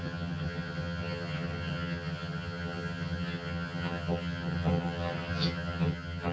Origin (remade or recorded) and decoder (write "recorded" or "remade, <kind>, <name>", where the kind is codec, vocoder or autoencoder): remade, vocoder, HiFi-GAN